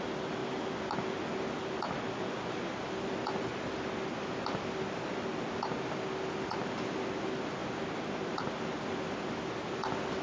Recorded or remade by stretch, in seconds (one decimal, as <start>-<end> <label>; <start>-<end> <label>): 0.0-10.2 recorded